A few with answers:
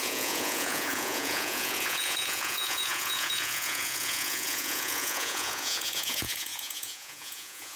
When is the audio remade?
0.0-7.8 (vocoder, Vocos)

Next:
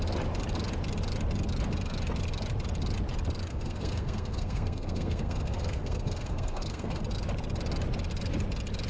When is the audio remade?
3.5-7.0 (codec, SNAC)

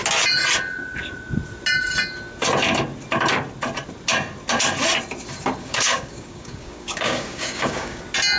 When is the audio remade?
5.6-8.0 (codec, DAC)